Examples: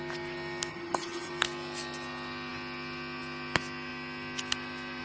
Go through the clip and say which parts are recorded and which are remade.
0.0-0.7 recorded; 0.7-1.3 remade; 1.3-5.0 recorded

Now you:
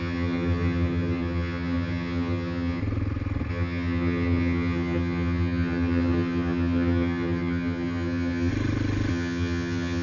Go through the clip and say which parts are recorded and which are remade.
0.0-2.8 remade; 2.8-3.5 recorded; 3.5-8.5 remade; 8.5-9.1 recorded; 9.1-10.0 remade